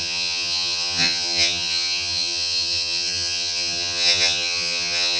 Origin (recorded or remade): remade